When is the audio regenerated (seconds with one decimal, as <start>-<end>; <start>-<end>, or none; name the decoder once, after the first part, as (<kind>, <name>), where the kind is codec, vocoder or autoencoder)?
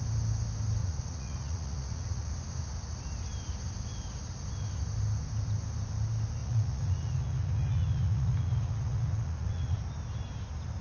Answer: 0.8-2.3 (vocoder, Vocos); 6.4-9.8